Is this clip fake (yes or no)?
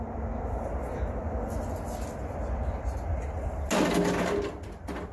no